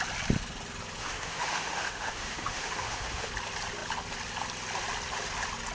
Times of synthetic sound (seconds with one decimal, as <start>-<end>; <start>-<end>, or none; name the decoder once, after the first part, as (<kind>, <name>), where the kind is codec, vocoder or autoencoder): 1.0-3.3 (autoencoder, DAC-VAE)